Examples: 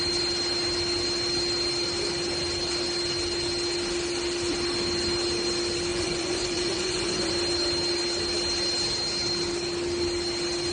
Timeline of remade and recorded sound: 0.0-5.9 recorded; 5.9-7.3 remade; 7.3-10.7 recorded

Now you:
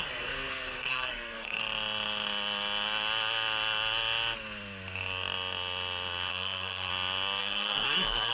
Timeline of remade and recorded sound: 0.0-1.6 remade; 1.6-6.3 recorded; 6.3-6.9 remade; 6.9-7.4 recorded; 7.4-8.3 remade

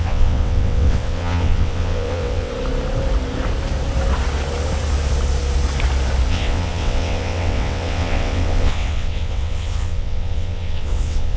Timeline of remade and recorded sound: 0.0-2.5 remade; 2.5-6.3 recorded; 6.3-11.4 remade

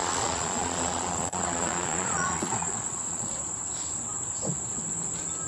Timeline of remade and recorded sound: 0.0-3.3 remade; 3.3-5.5 recorded

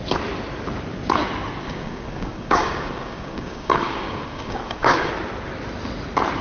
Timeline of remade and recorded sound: 0.0-1.6 recorded; 1.6-5.1 remade; 5.1-6.4 recorded